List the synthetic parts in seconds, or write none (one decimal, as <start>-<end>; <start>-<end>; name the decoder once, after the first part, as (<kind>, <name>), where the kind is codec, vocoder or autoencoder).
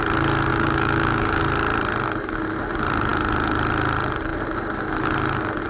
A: 0.5-1.4 (codec, DAC)